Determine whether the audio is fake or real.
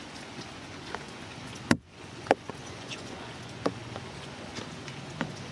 fake